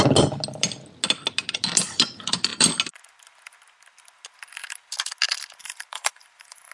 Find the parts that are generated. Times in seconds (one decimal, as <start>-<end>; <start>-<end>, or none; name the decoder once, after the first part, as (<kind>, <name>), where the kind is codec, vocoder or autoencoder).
5.6-6.7 (vocoder, BigVGAN v2)